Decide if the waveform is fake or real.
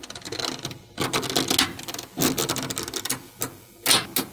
real